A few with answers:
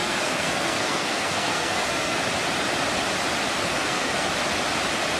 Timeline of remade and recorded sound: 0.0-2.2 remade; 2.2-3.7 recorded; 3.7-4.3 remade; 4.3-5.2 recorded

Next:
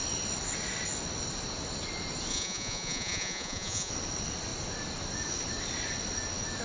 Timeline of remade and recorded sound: 0.0-2.3 recorded; 2.3-3.9 remade; 3.9-6.6 recorded

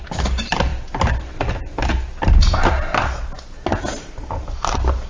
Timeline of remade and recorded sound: 0.0-5.1 recorded

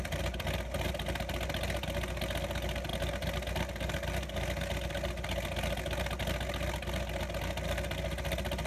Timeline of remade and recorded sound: 0.0-8.7 recorded

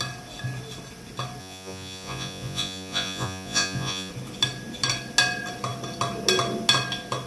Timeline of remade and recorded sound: 0.0-1.4 recorded; 1.4-4.1 remade; 4.1-7.3 recorded

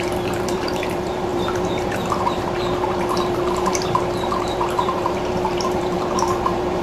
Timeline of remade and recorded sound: 0.0-6.8 remade